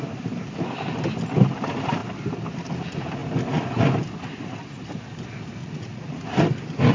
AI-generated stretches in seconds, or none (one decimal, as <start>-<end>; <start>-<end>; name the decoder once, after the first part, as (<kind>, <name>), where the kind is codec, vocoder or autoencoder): 5.6-6.2 (vocoder, Vocos)